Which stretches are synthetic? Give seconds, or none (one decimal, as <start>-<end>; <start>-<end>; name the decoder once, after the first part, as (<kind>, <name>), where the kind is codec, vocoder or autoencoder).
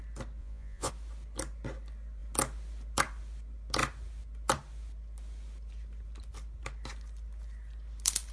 0.4-0.9 (vocoder, Vocos)